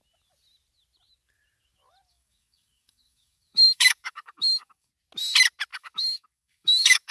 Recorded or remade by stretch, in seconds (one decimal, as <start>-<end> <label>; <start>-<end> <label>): 0.0-2.1 recorded; 2.1-4.9 remade; 4.9-5.7 recorded; 5.7-7.1 remade

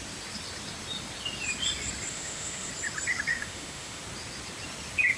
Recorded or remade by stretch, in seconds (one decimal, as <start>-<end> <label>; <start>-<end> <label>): 0.0-2.1 recorded; 2.1-2.7 remade; 2.7-3.3 recorded; 3.3-4.0 remade; 4.0-5.2 recorded

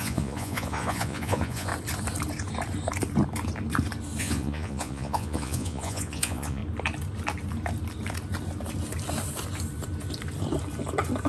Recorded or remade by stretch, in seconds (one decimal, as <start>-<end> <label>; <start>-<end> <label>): 0.0-1.7 remade; 1.7-4.2 recorded; 4.2-6.6 remade; 6.6-11.3 recorded

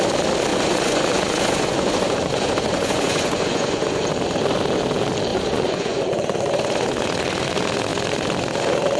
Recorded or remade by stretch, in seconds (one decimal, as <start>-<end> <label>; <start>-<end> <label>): 0.0-0.5 recorded; 0.5-4.1 remade; 4.1-5.3 recorded; 5.3-6.5 remade; 6.5-9.0 recorded